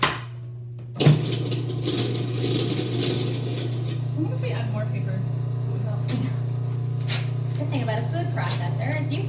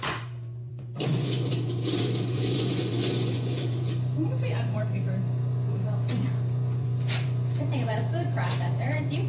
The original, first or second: first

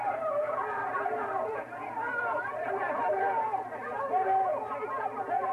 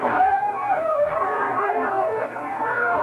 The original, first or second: first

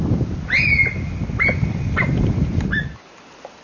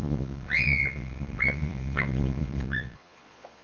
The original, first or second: first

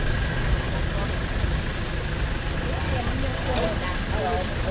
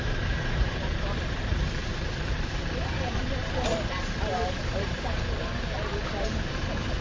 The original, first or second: first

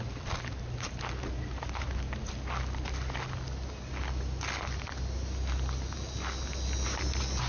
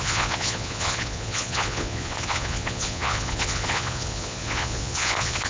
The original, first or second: first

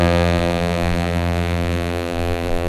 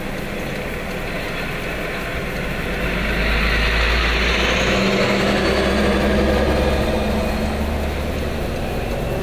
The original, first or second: second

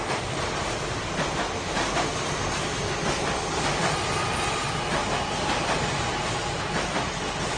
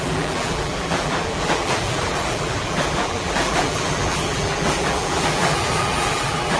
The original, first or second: first